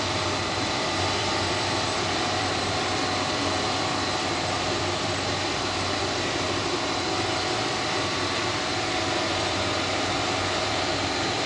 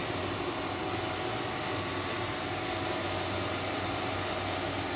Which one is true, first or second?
second